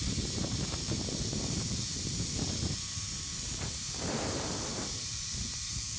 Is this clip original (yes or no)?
no